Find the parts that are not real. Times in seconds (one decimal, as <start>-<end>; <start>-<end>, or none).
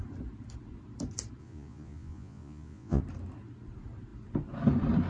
1.4-3.0